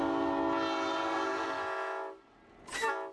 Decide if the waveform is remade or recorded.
recorded